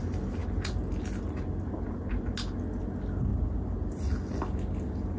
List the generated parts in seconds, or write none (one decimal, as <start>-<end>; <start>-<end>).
none